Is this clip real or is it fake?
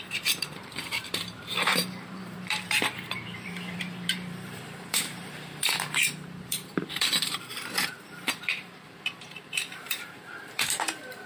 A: fake